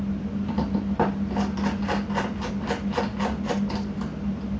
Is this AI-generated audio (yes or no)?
no